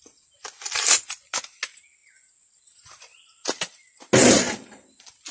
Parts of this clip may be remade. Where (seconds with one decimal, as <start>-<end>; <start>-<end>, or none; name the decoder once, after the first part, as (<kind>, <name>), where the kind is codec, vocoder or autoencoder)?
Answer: none